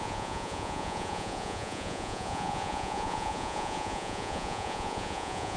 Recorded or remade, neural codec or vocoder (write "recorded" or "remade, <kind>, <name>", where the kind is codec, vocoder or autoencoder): remade, vocoder, Vocos